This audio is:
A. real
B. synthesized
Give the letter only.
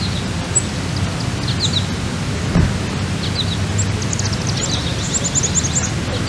A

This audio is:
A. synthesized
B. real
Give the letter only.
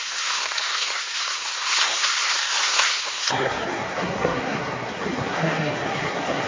A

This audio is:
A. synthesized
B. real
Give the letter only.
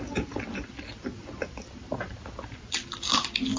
B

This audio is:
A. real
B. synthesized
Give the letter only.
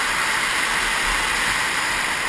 A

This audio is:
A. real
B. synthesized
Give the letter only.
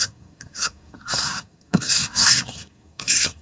B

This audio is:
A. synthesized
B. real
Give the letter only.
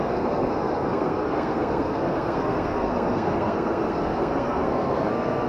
A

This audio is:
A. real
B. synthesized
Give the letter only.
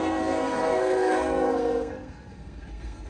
B